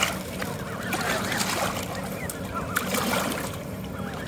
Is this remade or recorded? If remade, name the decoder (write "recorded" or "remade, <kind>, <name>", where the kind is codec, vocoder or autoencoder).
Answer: recorded